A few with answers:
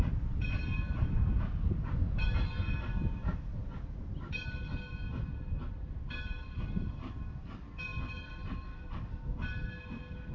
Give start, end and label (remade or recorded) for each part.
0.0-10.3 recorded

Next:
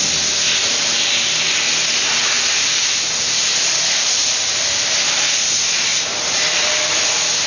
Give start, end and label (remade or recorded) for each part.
0.0-2.2 recorded; 2.2-4.8 remade; 4.8-5.9 recorded; 5.9-7.0 remade; 7.0-7.5 recorded

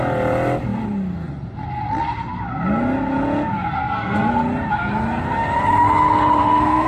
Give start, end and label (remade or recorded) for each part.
0.0-3.8 recorded; 3.8-4.3 remade; 4.3-6.4 recorded; 6.4-6.9 remade

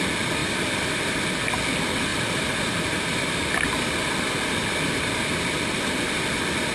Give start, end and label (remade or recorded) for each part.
0.0-0.4 recorded; 0.4-1.3 remade; 1.3-2.1 recorded; 2.1-3.7 remade; 3.7-6.7 recorded

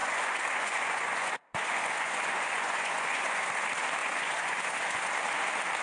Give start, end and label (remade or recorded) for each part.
0.0-3.5 remade; 3.5-4.0 recorded; 4.0-5.1 remade; 5.1-5.8 recorded

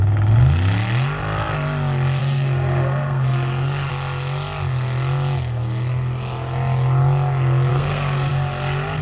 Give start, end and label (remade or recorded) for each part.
0.0-2.2 recorded; 2.2-3.9 remade; 3.9-7.7 recorded; 7.7-8.3 remade; 8.3-9.0 recorded